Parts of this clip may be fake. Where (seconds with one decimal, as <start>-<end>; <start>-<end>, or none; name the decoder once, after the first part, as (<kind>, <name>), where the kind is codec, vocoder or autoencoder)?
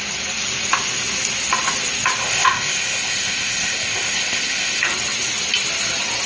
2.2-4.8 (codec, ZipCodec)